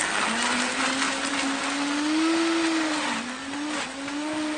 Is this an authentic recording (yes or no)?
yes